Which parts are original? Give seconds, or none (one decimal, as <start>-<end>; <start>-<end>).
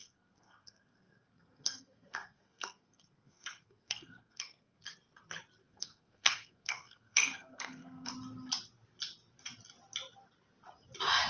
4.9-5.6; 8.1-11.3